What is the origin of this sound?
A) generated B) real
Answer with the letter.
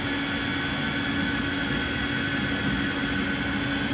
B